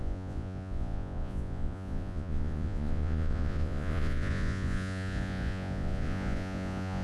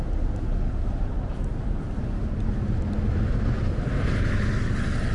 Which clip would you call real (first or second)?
second